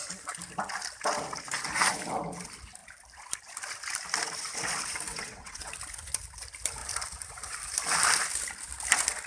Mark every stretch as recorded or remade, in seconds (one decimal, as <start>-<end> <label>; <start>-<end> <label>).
0.0-5.1 recorded; 5.1-5.7 remade; 5.7-9.3 recorded